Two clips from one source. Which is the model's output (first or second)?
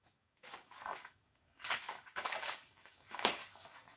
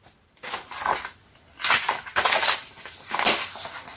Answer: first